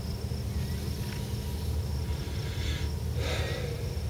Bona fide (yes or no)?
yes